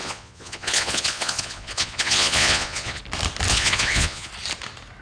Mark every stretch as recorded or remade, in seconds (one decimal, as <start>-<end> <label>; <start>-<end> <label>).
0.0-3.0 remade; 3.0-3.5 recorded; 3.5-4.3 remade; 4.3-5.0 recorded